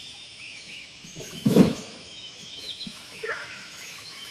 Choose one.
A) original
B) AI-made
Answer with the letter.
B